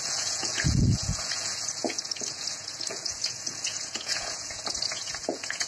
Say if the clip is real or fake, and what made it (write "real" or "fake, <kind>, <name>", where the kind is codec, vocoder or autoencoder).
fake, vocoder, Vocos